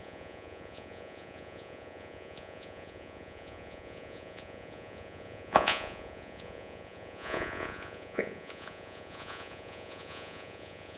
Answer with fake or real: fake